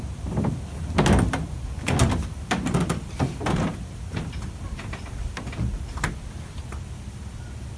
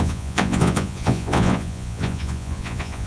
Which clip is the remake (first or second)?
second